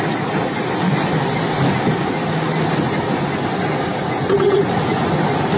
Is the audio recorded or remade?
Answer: recorded